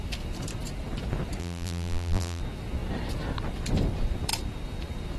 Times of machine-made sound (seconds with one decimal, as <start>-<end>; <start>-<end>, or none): 1.4-2.4